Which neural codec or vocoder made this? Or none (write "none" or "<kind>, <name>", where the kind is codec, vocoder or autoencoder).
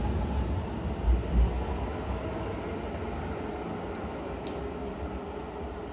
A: none